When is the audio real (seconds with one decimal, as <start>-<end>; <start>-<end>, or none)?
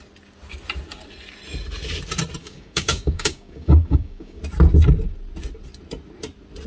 0.0-2.4; 4.4-6.7